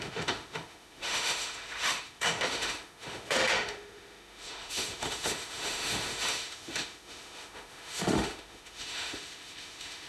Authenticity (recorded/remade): remade